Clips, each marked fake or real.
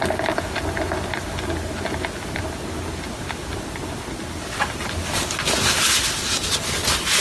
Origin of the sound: real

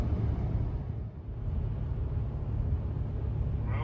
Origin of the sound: real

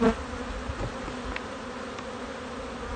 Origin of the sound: real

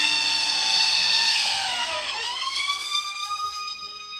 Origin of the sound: fake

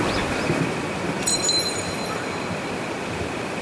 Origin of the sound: real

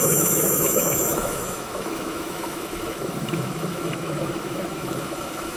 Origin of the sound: fake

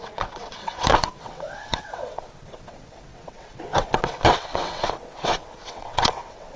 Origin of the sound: fake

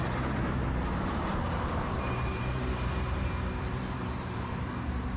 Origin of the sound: fake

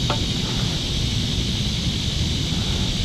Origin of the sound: real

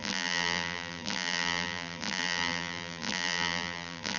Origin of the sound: fake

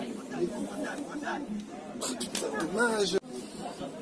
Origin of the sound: real